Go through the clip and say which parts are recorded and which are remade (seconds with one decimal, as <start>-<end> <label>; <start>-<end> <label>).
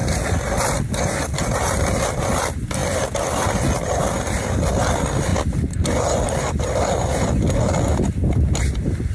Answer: 0.0-9.1 recorded